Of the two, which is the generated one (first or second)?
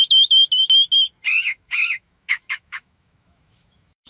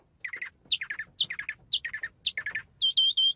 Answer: first